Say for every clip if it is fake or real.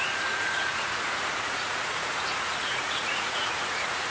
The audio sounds fake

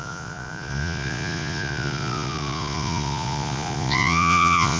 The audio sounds fake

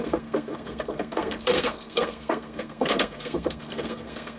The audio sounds fake